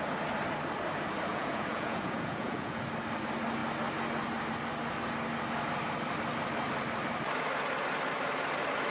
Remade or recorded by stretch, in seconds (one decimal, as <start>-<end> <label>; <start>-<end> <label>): 0.0-1.3 recorded; 1.3-2.8 remade; 2.8-8.9 recorded

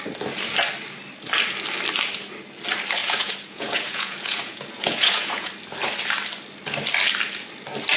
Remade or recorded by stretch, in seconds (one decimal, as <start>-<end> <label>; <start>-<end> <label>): 0.0-3.0 recorded; 3.0-5.5 remade; 5.5-8.0 recorded

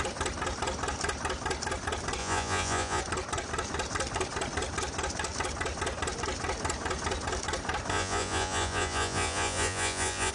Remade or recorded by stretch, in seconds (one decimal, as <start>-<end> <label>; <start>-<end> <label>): 0.0-2.2 recorded; 2.2-3.0 remade; 3.0-7.9 recorded; 7.9-10.3 remade

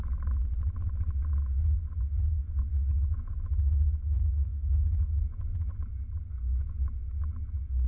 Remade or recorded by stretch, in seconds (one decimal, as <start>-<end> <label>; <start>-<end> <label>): 0.0-1.6 recorded; 1.6-2.6 remade; 2.6-3.1 recorded; 3.1-5.8 remade; 5.8-7.9 recorded

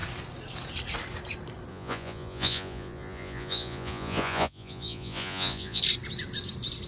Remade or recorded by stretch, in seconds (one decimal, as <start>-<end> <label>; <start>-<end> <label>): 0.0-1.7 recorded; 1.7-5.8 remade; 5.8-6.9 recorded

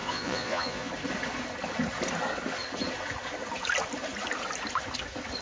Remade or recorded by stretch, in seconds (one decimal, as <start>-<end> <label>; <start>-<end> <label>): 0.0-0.9 remade; 0.9-5.4 recorded

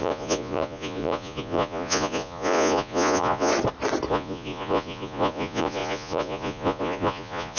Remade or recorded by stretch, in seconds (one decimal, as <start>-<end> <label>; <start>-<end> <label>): 0.0-3.5 remade; 3.5-4.1 recorded; 4.1-7.6 remade